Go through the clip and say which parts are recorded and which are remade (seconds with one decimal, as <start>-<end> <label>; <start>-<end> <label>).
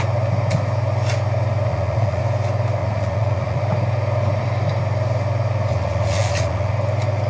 0.0-1.7 recorded; 1.7-2.2 remade; 2.2-2.8 recorded; 2.8-3.6 remade; 3.6-5.7 recorded; 5.7-6.7 remade; 6.7-7.3 recorded